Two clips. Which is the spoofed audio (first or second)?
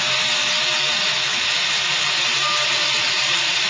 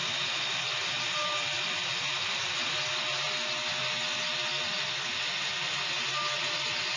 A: first